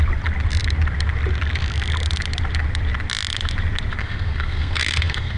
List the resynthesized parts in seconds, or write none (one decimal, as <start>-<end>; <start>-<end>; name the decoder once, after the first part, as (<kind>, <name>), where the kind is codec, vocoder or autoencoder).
4.0-5.4 (codec, SNAC)